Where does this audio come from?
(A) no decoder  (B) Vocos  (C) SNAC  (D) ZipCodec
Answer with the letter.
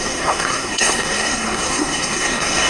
C